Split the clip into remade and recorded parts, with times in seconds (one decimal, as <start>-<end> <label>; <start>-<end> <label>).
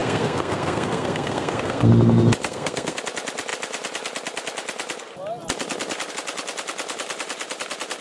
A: 0.0-1.9 remade; 1.9-2.4 recorded; 2.4-3.0 remade; 3.0-8.0 recorded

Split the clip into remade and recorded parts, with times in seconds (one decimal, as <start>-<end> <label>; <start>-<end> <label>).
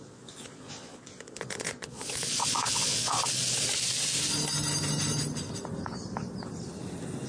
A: 0.0-3.2 remade; 3.2-7.3 recorded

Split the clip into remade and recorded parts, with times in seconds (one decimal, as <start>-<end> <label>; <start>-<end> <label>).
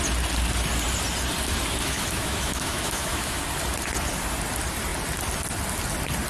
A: 0.0-1.8 recorded; 1.8-3.4 remade; 3.4-6.3 recorded